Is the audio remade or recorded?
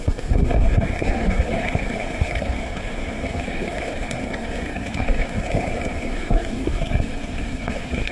remade